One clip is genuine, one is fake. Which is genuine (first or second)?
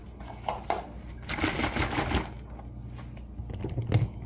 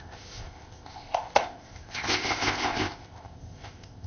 first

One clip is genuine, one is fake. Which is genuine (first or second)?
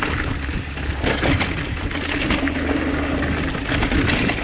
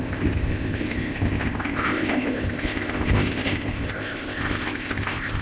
first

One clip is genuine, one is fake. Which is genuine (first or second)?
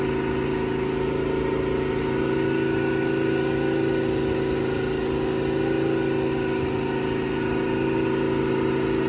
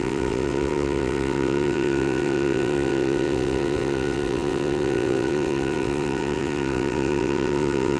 first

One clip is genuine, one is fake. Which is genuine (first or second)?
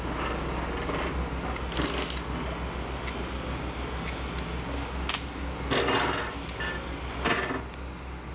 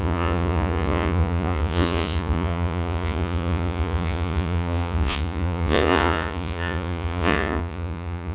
first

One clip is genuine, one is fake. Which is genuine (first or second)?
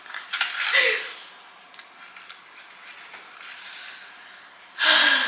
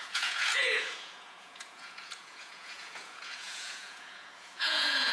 first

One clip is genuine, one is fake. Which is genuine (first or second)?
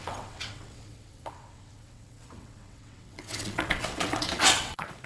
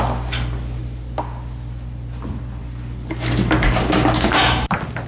second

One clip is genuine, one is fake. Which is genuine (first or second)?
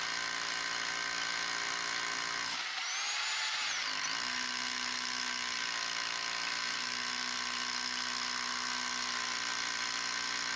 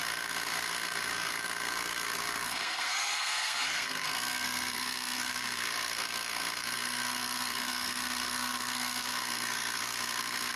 first